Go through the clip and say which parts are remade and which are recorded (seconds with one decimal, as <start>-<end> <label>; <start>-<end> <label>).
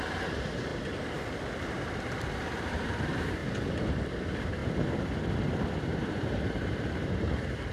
0.0-0.7 remade; 0.7-1.6 recorded; 1.6-3.4 remade; 3.4-3.9 recorded; 3.9-4.6 remade; 4.6-5.9 recorded; 5.9-7.7 remade